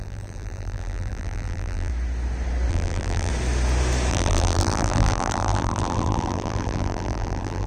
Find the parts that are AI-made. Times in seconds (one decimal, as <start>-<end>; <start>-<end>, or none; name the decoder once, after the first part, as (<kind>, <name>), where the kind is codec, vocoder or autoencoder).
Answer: 0.0-1.9 (vocoder, BigVGAN v2); 2.7-3.3; 4.1-7.7